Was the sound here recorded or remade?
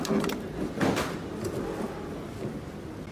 recorded